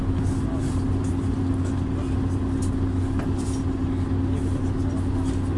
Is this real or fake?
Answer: real